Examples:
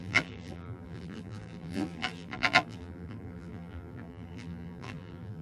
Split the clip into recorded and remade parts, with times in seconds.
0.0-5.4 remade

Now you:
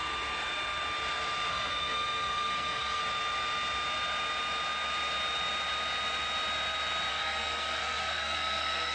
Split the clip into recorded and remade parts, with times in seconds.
0.0-1.5 recorded; 1.5-3.0 remade; 3.0-7.1 recorded; 7.1-8.9 remade

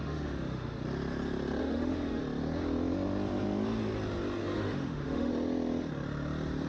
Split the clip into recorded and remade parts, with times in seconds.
0.0-0.8 remade; 0.8-1.6 recorded; 1.6-2.2 remade; 2.2-4.4 recorded; 4.4-5.3 remade; 5.3-6.7 recorded

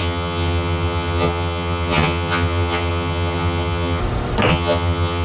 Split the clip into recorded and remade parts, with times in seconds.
0.0-4.0 remade; 4.0-4.5 recorded; 4.5-5.2 remade

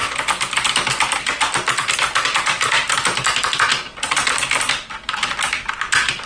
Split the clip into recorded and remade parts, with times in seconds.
0.0-6.3 recorded

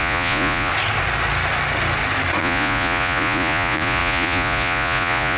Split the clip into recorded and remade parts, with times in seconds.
0.0-0.7 remade; 0.7-2.4 recorded; 2.4-5.4 remade